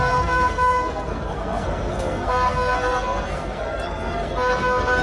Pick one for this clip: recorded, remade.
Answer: remade